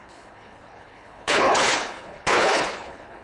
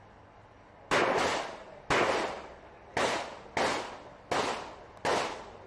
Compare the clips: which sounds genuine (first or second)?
second